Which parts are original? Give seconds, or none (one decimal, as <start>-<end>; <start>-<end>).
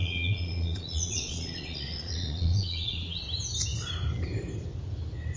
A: 3.2-5.4